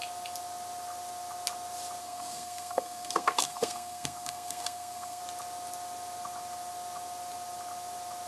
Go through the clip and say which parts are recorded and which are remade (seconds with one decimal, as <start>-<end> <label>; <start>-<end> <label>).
0.0-2.0 recorded; 2.0-5.2 remade; 5.2-8.3 recorded